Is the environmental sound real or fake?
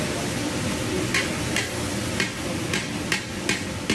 real